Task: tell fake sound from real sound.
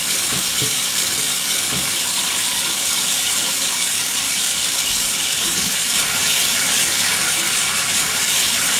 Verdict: fake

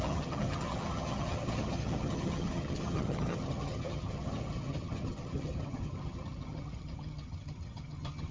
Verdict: fake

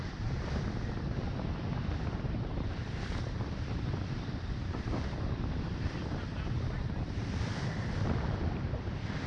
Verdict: fake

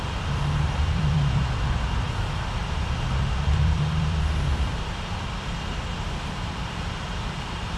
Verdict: fake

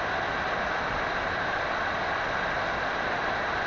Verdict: real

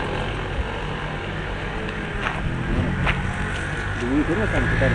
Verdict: real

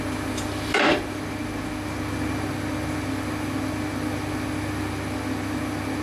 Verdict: real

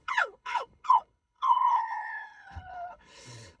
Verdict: fake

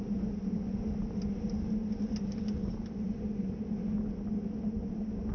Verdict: real